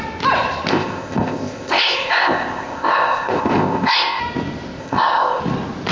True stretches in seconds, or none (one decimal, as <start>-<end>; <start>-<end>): 0.0-0.7; 4.2-4.8; 5.4-5.9